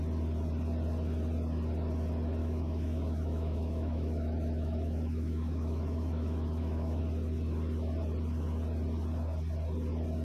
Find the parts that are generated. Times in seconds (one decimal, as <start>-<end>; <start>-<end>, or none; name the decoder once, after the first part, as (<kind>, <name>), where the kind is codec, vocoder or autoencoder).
2.4-7.0 (autoencoder, DAC-VAE)

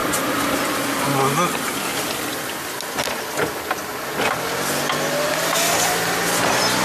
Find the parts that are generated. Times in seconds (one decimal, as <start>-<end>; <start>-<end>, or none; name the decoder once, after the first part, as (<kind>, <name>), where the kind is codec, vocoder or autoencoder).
none

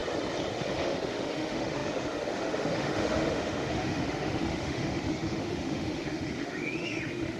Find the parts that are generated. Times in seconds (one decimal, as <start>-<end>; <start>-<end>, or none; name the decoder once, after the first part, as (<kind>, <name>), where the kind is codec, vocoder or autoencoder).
0.5-7.4 (autoencoder, DAC-VAE)

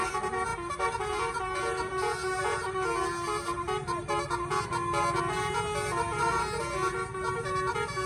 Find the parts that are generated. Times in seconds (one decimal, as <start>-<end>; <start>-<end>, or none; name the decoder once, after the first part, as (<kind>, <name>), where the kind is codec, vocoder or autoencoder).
none